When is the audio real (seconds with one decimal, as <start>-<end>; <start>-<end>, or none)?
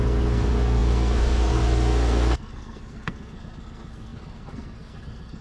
none